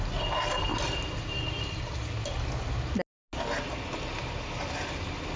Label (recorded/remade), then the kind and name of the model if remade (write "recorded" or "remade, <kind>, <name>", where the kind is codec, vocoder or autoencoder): recorded